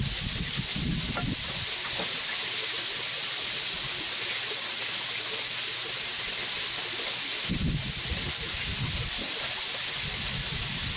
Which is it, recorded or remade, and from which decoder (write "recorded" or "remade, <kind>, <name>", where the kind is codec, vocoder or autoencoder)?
recorded